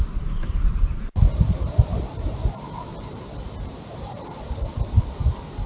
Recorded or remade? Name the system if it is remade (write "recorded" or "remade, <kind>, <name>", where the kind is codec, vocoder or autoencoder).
remade, vocoder, BigVGAN v2